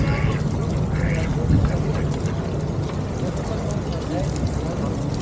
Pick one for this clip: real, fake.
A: real